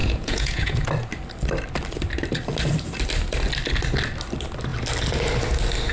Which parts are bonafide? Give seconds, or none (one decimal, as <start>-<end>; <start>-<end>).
0.9-5.9